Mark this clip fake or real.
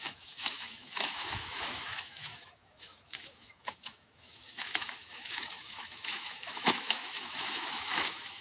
fake